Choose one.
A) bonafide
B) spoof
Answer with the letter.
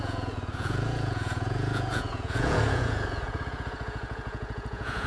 B